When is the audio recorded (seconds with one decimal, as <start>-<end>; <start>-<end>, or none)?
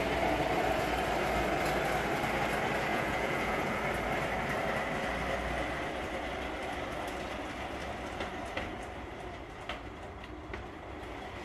0.0-2.9; 3.8-11.4